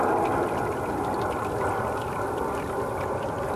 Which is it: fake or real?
real